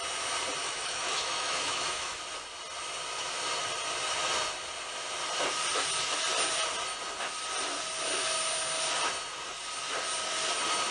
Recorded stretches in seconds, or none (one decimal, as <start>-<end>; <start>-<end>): 0.0-0.6; 2.2-10.9